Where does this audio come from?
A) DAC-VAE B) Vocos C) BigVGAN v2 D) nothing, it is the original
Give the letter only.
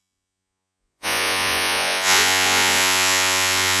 B